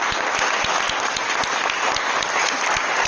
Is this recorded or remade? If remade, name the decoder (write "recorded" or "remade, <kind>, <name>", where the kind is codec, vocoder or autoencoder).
recorded